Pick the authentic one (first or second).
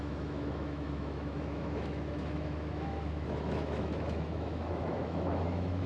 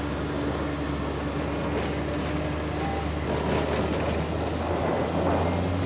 second